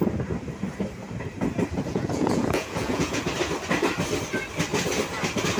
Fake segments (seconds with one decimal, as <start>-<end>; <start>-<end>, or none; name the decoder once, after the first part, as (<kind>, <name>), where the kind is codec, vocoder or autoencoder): 1.9-3.2 (vocoder, Vocos)